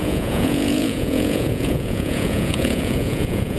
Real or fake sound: fake